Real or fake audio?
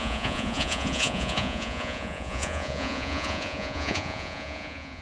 fake